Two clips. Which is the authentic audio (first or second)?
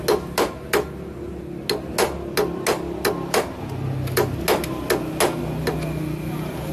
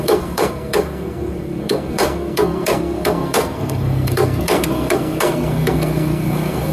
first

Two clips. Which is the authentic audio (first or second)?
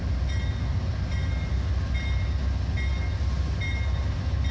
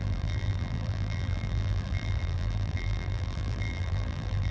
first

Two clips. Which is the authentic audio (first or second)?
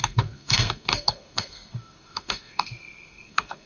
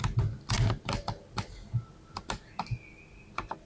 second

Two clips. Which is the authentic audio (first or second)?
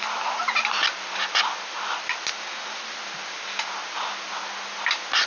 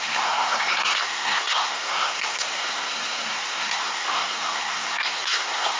first